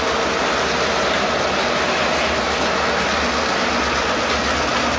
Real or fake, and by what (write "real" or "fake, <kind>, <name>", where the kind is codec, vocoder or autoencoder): real